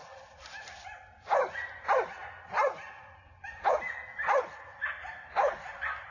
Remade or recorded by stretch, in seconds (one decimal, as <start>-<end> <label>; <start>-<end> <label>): 0.0-6.1 recorded